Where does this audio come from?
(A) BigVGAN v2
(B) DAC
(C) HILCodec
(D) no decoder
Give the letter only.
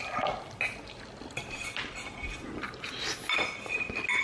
D